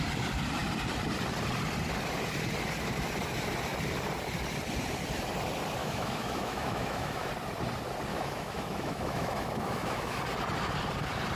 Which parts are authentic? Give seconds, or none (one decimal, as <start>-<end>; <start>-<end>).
0.0-5.8; 7.3-8.1; 10.2-11.4